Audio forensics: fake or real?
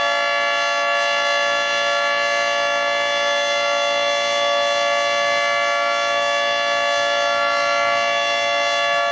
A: real